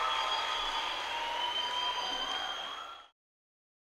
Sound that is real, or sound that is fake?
real